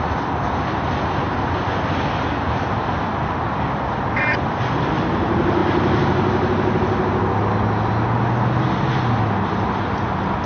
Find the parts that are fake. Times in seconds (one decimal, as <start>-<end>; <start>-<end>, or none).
none